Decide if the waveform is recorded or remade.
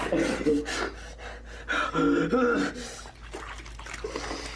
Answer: recorded